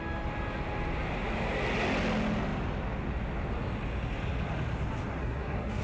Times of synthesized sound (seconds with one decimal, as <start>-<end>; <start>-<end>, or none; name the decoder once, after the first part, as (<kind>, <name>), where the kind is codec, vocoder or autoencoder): 5.2-5.8 (codec, SNAC)